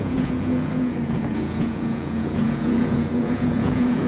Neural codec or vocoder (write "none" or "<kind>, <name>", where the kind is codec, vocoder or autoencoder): vocoder, Vocos